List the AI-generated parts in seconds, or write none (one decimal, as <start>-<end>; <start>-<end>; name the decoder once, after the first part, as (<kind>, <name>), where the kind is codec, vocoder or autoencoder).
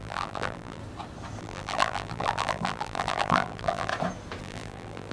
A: 0.0-0.8 (vocoder, BigVGAN v2); 1.4-3.9; 4.4-5.1